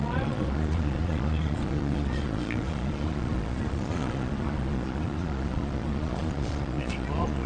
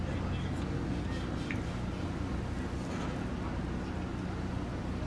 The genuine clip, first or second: second